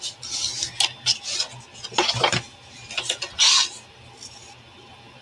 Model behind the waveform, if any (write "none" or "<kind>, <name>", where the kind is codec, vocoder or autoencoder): none